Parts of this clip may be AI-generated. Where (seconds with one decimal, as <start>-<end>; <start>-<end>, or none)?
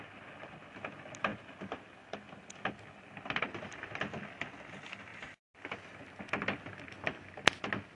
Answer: none